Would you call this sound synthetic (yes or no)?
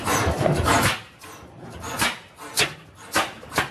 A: no